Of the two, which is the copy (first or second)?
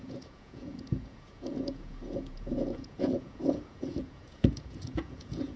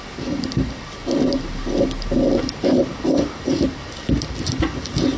first